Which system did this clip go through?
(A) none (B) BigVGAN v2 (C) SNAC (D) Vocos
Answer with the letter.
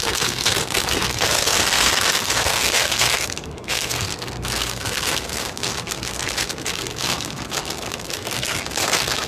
C